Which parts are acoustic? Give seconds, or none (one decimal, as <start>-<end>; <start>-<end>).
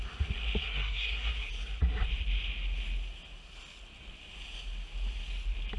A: 0.0-0.6; 1.5-5.8